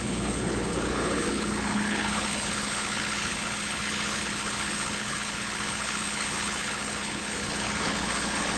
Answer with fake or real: fake